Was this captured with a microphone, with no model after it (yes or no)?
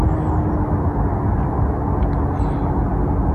yes